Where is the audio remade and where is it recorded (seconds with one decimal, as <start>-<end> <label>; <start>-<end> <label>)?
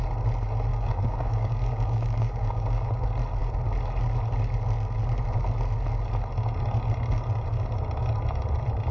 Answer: 0.0-0.7 recorded; 0.7-2.9 remade; 2.9-8.9 recorded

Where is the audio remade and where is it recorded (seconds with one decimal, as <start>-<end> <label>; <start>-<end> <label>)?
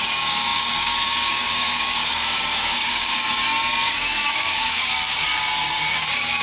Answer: 0.0-5.3 remade; 5.3-5.9 recorded; 5.9-6.4 remade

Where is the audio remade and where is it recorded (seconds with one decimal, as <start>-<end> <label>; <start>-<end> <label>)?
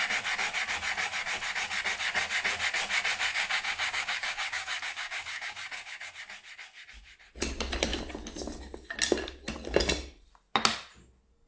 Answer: 0.0-3.3 recorded; 3.3-6.1 remade; 6.1-11.5 recorded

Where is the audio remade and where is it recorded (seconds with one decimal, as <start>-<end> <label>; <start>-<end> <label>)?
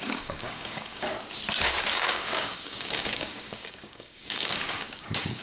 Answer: 0.0-1.1 remade; 1.1-1.9 recorded; 1.9-5.4 remade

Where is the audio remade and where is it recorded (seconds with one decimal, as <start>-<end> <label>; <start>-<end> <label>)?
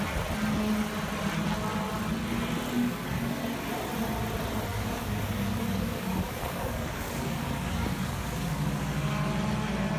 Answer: 0.0-2.8 recorded; 2.8-3.4 remade; 3.4-4.7 recorded; 4.7-9.3 remade; 9.3-10.0 recorded